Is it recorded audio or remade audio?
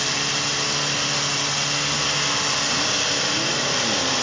recorded